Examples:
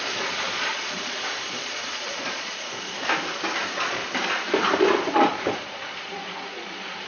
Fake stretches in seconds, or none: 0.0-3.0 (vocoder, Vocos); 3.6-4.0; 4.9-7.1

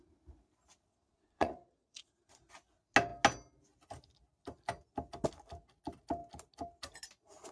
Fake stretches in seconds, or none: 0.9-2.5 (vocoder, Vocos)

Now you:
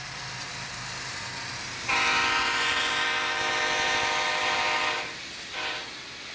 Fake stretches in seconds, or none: 2.4-2.9 (vocoder, Vocos)